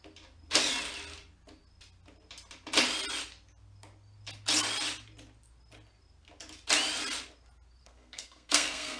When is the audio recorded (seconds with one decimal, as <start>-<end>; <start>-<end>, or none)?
0.0-7.8